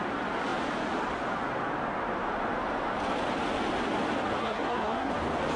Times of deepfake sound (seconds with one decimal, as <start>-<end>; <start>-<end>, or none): 4.4-5.1